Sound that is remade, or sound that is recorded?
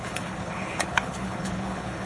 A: remade